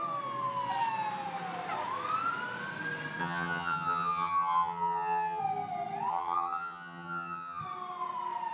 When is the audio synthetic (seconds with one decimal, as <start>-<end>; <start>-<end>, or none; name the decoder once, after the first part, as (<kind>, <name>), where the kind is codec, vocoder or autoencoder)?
3.2-5.4 (vocoder, HiFi-GAN); 6.1-7.6